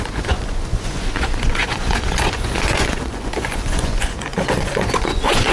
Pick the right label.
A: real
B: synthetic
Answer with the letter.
B